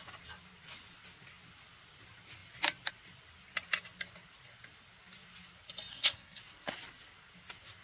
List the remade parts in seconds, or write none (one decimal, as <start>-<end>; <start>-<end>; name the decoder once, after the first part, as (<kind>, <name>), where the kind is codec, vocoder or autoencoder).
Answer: 5.9-6.4 (codec, SNAC)